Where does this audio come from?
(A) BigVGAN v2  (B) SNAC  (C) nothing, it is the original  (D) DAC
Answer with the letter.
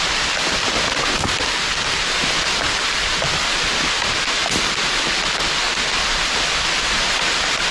C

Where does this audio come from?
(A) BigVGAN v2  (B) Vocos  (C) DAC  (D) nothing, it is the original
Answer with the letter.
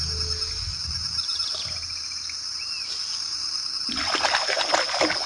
D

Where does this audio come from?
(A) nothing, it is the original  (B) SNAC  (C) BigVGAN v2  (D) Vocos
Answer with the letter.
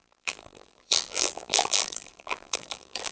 C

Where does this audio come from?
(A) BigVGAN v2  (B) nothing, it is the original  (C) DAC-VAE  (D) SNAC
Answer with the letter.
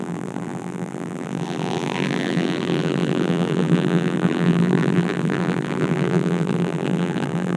A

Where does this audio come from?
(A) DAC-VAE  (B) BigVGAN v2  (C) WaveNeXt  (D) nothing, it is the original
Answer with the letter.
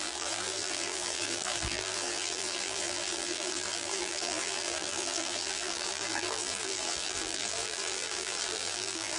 B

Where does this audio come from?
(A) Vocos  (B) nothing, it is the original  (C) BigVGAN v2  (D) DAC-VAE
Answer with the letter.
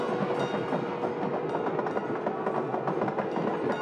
B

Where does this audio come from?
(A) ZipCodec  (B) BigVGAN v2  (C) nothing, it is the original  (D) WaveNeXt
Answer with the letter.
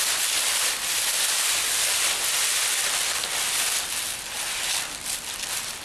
C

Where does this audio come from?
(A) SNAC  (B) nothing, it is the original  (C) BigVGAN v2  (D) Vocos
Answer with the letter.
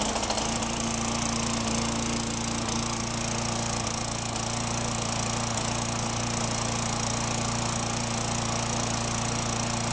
B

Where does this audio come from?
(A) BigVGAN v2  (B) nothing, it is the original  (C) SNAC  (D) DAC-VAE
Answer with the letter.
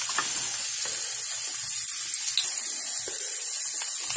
B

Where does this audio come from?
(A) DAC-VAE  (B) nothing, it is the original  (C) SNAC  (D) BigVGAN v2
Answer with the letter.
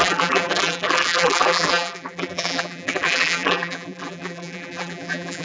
D